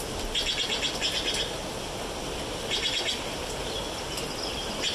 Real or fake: real